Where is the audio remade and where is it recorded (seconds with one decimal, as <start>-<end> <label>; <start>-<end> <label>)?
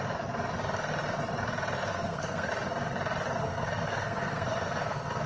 0.0-1.9 recorded; 1.9-2.5 remade; 2.5-3.4 recorded; 3.4-5.3 remade